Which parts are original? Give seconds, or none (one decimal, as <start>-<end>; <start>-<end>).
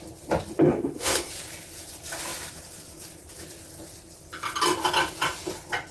0.0-0.6; 1.3-5.9